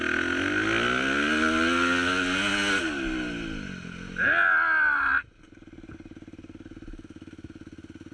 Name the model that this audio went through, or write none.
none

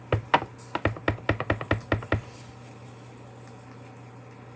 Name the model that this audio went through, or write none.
none